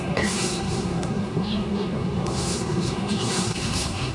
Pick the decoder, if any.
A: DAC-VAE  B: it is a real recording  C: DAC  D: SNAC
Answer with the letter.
D